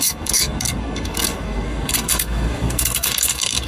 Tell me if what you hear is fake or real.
fake